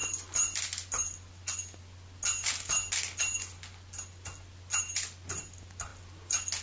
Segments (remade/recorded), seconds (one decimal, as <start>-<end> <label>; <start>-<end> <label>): 0.0-6.6 recorded